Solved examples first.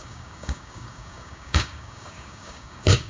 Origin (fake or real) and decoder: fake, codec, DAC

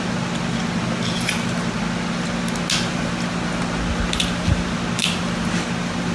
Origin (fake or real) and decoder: real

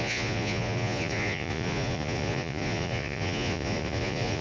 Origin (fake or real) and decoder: fake, vocoder, Vocos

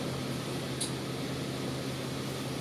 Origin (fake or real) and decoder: real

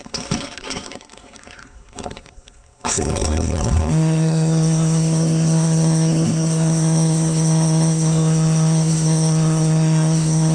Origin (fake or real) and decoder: fake, codec, SNAC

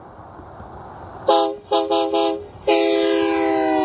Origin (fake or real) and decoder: real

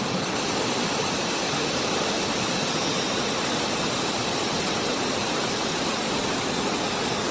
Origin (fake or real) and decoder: real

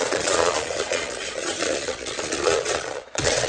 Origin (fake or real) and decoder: fake, vocoder, Vocos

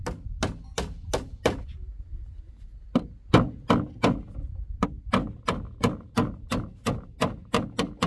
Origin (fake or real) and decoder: real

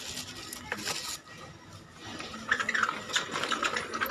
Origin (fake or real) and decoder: real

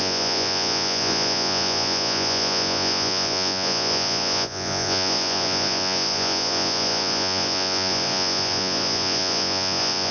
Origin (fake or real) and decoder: fake, vocoder, Vocos